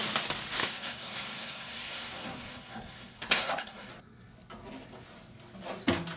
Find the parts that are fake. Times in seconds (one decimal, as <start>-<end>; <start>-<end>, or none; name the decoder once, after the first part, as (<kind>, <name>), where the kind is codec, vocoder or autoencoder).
0.6-3.9 (codec, SNAC)